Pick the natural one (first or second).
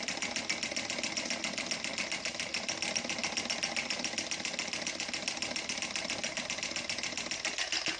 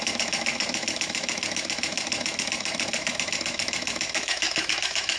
first